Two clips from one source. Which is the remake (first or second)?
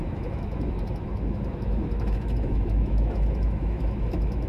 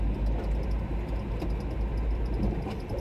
first